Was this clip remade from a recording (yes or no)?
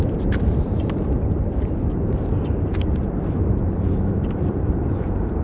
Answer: yes